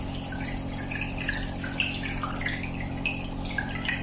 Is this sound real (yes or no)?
yes